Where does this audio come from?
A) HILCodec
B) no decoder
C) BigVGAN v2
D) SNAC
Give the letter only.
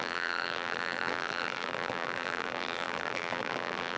C